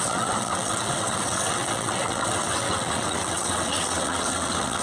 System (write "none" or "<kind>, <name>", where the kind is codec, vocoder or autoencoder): vocoder, WaveNeXt